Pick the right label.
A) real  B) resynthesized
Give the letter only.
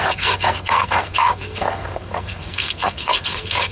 B